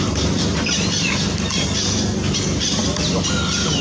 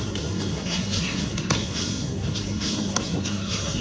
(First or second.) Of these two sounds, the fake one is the second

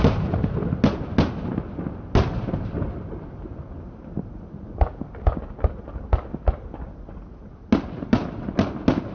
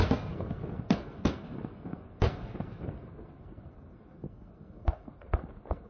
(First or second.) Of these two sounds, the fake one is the second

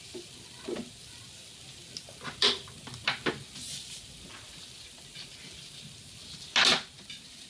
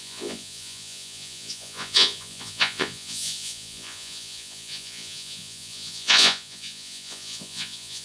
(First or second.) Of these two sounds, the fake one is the second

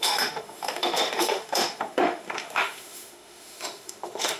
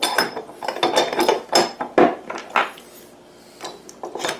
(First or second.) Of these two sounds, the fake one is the first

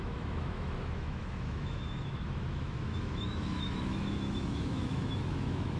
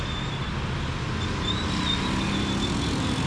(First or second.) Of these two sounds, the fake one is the first